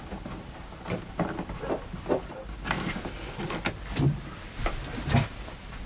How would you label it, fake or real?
real